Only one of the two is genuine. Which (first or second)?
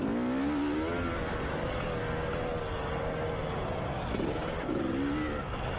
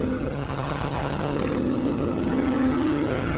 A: first